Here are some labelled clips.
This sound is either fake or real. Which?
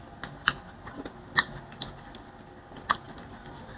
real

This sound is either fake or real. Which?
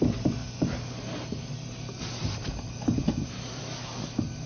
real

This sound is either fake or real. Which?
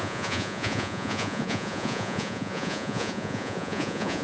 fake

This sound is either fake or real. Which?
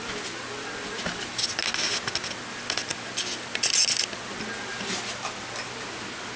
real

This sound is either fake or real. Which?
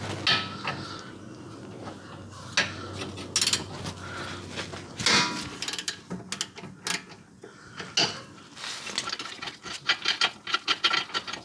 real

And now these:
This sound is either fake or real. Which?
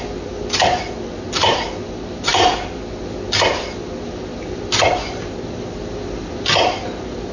real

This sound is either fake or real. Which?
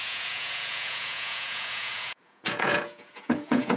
fake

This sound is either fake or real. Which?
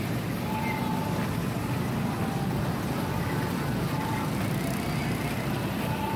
real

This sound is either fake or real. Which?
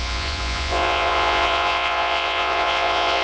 fake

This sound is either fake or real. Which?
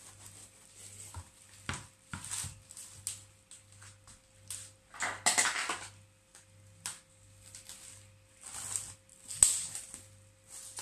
real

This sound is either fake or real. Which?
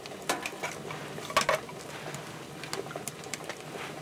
real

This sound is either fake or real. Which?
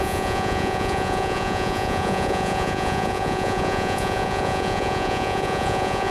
fake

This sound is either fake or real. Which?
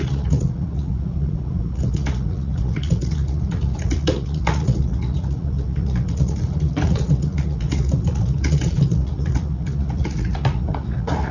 fake